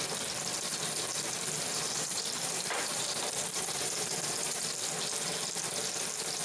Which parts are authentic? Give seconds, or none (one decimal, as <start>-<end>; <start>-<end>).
0.0-1.7; 4.8-6.4